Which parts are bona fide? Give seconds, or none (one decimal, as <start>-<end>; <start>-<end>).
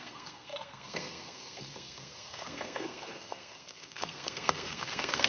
none